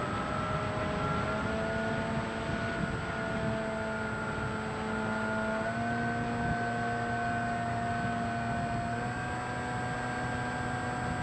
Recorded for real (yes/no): yes